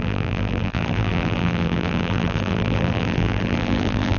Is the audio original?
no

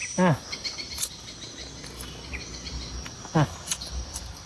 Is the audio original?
yes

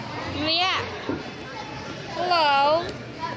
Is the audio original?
yes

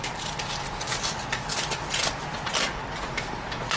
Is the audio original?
yes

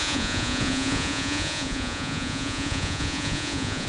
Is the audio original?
no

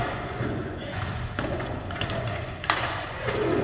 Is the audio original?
no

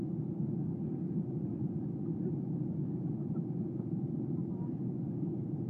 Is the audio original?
yes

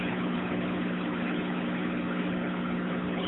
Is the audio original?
no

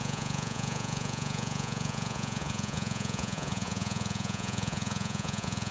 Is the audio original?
no